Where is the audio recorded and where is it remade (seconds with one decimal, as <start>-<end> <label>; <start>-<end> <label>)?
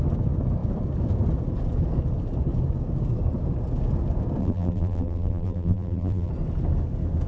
0.0-4.4 recorded; 4.4-6.3 remade; 6.3-7.3 recorded